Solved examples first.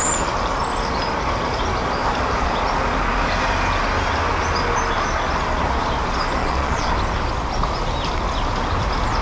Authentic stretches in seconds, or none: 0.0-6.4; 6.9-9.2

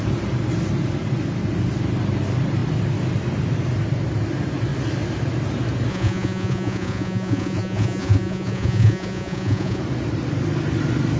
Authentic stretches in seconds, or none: 0.0-5.9; 9.8-11.2

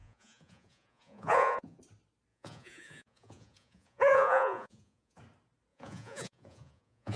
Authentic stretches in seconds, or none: 1.8-2.3; 5.2-5.7

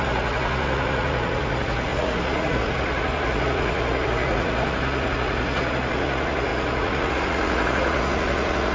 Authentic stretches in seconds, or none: none

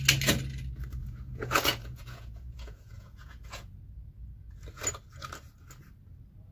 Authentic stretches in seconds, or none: 0.0-1.0; 3.8-6.5

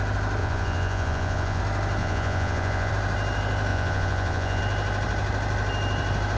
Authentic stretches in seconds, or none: 0.0-0.4; 1.6-2.0; 2.9-3.7; 4.6-6.4

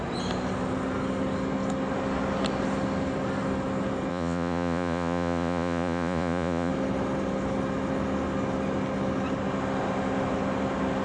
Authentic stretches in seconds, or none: 0.0-4.1; 6.7-11.0

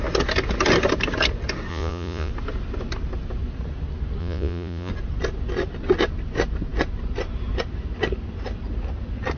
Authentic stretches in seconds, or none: 0.0-1.7; 2.3-4.2; 4.9-9.4